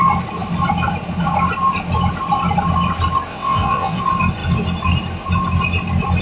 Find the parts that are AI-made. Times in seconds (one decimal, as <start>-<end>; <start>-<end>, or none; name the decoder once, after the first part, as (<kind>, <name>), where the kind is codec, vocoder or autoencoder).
3.3-4.0 (vocoder, WaveNeXt)